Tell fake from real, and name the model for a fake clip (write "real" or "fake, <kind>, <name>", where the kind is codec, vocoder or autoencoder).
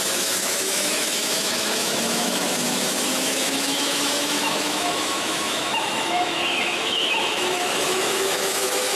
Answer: fake, autoencoder, DAC-VAE